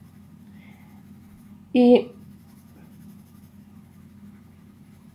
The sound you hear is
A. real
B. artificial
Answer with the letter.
A